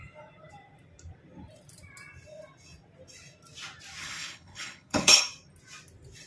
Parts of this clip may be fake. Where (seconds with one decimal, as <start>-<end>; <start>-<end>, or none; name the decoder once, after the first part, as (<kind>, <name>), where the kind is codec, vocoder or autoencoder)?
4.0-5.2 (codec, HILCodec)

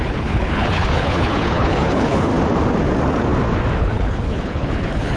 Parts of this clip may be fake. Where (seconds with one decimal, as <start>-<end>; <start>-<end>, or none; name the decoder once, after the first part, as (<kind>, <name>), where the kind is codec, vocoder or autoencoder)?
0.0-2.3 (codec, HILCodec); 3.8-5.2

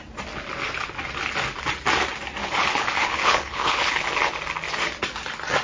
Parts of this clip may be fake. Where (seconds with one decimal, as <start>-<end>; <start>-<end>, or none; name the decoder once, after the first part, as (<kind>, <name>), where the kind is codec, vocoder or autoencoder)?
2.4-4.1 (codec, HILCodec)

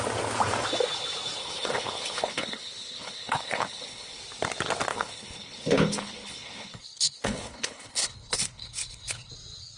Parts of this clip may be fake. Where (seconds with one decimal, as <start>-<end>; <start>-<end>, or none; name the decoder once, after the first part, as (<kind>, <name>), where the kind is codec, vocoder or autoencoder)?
1.4-4.2 (codec, HILCodec); 4.9-9.3

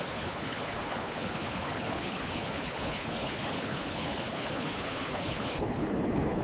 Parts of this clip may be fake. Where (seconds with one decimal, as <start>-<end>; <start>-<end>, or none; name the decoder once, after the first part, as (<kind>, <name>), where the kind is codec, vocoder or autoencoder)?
0.0-6.4 (codec, HILCodec)

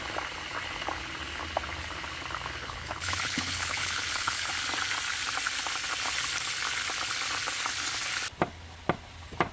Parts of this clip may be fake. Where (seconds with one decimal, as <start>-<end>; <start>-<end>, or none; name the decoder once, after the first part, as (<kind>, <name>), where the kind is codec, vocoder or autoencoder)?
2.6-4.5 (codec, HILCodec)